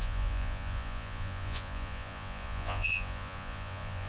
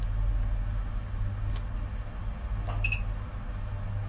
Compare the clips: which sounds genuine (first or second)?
second